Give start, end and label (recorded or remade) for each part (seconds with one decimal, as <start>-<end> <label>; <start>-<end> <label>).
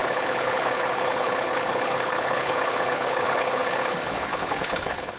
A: 0.0-5.2 remade